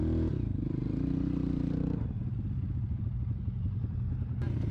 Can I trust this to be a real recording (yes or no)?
yes